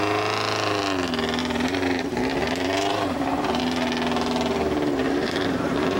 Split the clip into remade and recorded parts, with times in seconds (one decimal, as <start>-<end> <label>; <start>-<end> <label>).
0.0-1.4 recorded; 1.4-3.6 remade; 3.6-5.0 recorded; 5.0-6.0 remade